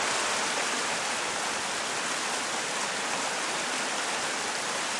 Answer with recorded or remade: recorded